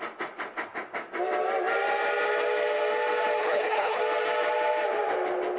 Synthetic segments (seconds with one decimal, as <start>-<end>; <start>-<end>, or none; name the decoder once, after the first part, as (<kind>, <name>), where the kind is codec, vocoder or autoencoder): 3.4-4.0 (codec, HILCodec)